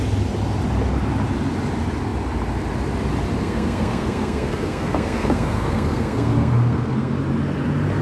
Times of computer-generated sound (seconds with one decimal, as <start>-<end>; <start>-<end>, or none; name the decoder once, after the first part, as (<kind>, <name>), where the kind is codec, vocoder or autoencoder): 3.4-7.1 (codec, SNAC)

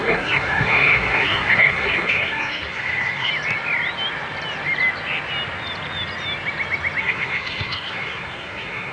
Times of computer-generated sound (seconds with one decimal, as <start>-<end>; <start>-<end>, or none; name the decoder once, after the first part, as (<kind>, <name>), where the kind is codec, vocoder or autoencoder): 0.0-3.3 (codec, SNAC); 7.0-8.9

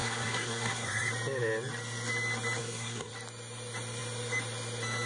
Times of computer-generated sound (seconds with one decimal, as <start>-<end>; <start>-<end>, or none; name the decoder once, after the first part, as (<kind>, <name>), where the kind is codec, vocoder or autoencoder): 0.0-1.1 (codec, SNAC); 2.6-3.1

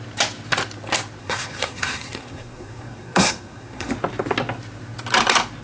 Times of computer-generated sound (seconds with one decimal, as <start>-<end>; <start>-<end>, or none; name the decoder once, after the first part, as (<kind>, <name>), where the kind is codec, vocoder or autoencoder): 1.2-3.9 (codec, SNAC)

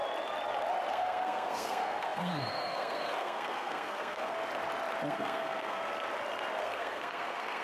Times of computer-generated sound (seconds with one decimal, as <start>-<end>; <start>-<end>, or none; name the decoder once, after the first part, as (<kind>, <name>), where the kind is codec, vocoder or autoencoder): 0.9-4.4 (codec, SNAC); 5.1-5.8; 6.6-7.6